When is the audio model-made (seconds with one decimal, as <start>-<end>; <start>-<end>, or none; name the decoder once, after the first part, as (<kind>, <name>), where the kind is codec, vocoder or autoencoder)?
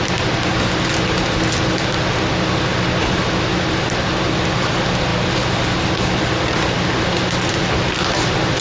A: 5.1-6.4 (vocoder, BigVGAN v2)